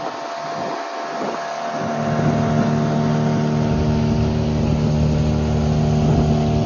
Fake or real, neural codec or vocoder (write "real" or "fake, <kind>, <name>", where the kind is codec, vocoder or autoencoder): real